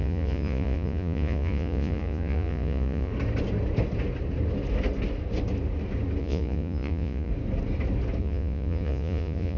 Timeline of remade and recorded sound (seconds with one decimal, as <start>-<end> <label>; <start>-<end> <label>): 0.0-3.1 remade; 3.1-6.2 recorded; 6.2-7.3 remade; 7.3-8.2 recorded; 8.2-9.6 remade